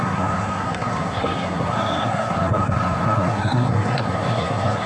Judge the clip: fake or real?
fake